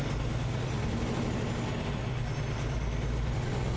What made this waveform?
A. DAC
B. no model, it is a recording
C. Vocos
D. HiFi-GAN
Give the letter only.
B